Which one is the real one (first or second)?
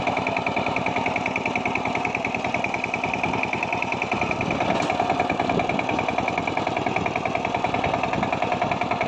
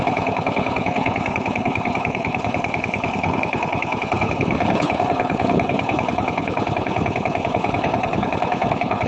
first